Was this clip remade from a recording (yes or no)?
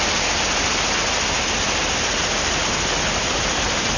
no